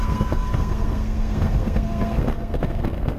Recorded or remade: remade